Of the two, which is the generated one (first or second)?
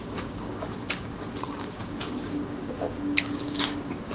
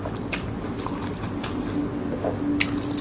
first